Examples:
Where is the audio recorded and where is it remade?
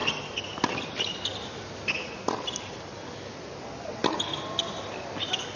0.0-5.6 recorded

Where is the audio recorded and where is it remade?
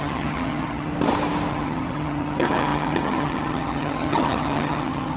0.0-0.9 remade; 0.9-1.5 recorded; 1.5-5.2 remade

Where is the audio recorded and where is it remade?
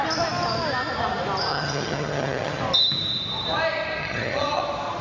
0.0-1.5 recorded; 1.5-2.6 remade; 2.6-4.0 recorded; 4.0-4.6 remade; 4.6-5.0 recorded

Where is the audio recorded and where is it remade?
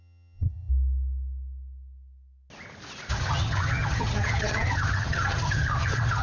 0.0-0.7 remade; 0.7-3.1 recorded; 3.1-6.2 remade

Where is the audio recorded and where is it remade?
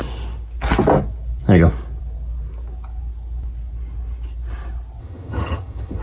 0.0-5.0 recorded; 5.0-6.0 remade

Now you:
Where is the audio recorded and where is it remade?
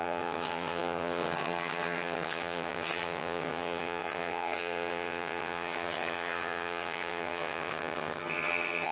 0.0-8.9 remade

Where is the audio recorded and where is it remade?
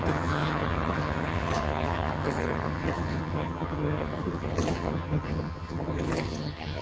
0.0-6.8 remade